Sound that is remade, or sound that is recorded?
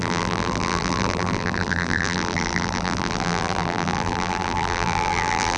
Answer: remade